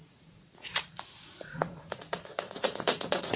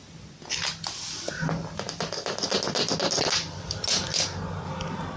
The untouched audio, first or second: second